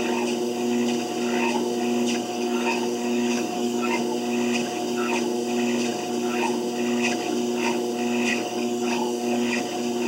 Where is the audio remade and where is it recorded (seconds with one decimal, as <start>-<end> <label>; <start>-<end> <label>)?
0.0-2.2 recorded; 2.2-4.0 remade; 4.0-8.3 recorded; 8.3-9.6 remade; 9.6-10.1 recorded